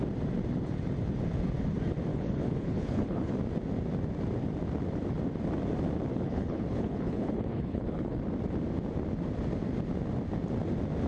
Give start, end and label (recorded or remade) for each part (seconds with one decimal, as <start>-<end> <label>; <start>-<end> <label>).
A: 0.0-2.1 recorded; 2.1-3.3 remade; 3.3-6.1 recorded; 6.1-8.2 remade; 8.2-11.1 recorded